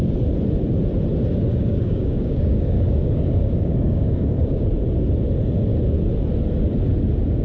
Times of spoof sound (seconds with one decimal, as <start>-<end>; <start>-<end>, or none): 1.5-4.6